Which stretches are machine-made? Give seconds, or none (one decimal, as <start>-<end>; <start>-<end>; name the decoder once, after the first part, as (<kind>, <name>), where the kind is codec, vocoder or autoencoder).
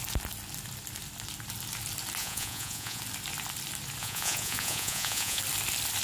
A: 2.2-3.0 (vocoder, Vocos); 4.0-5.4